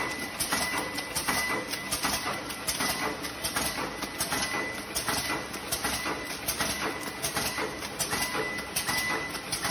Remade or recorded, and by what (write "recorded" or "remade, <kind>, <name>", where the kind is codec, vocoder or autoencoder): recorded